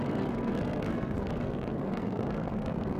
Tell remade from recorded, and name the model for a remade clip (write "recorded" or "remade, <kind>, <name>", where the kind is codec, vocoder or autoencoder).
remade, codec, SNAC